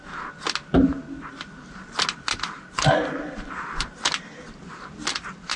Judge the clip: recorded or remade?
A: recorded